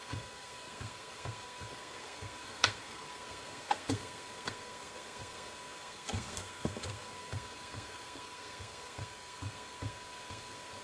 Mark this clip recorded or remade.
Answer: remade